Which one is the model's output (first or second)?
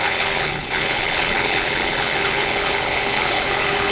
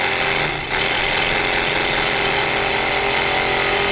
first